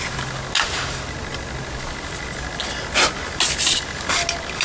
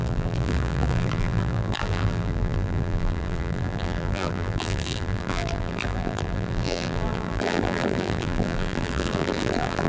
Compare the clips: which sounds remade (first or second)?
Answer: second